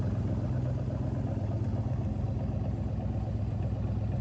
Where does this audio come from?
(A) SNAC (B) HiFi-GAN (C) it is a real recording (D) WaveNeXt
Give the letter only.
C